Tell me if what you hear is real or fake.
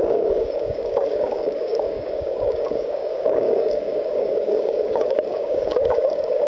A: fake